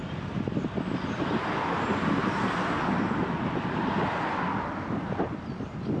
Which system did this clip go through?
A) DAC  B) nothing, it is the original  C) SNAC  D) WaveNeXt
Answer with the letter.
B